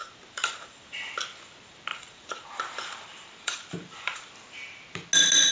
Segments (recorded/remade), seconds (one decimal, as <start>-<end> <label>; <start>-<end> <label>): 0.0-1.1 remade; 1.1-1.9 recorded; 1.9-4.3 remade; 4.3-5.5 recorded